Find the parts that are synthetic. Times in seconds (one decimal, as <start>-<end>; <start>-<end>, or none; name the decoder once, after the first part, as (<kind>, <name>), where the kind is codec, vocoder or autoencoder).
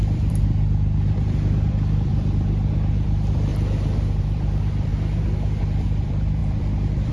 0.0-3.5 (vocoder, BigVGAN v2); 4.2-4.9; 5.6-7.1